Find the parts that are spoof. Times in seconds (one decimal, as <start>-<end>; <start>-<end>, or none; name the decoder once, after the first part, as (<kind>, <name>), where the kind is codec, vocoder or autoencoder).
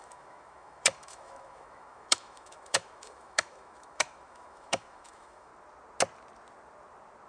0.0-5.5 (autoencoder, DAC-VAE)